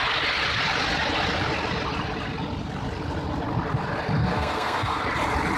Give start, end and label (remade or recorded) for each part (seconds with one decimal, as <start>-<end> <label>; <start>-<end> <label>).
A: 0.0-4.2 recorded; 4.2-5.0 remade; 5.0-5.6 recorded